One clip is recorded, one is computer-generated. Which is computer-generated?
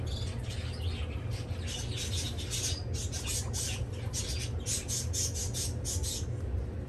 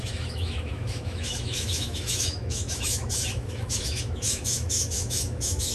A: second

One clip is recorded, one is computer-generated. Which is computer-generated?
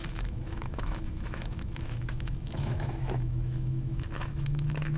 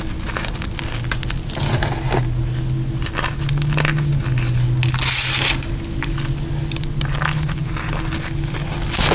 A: first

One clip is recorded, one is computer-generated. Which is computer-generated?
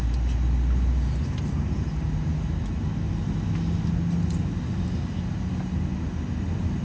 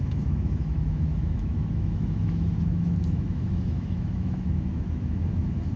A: second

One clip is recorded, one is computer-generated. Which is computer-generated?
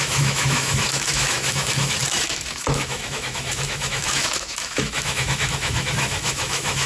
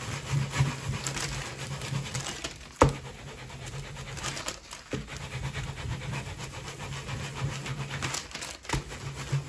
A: first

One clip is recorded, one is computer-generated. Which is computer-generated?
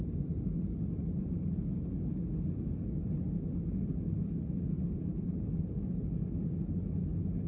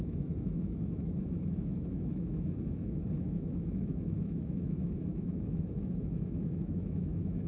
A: second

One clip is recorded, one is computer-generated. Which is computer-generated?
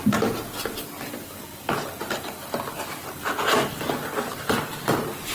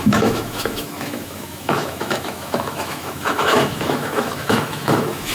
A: second